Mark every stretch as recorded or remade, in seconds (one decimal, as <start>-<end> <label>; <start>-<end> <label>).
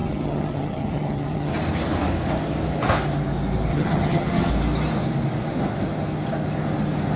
0.0-1.5 remade; 1.5-3.7 recorded; 3.7-4.5 remade; 4.5-7.2 recorded